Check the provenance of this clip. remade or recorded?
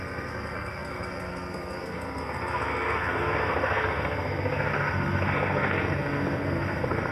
remade